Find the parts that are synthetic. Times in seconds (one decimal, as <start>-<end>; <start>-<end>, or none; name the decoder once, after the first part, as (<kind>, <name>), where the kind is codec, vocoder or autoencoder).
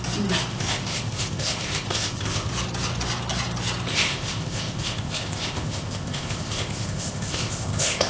0.5-2.5 (codec, ZipCodec); 3.9-8.1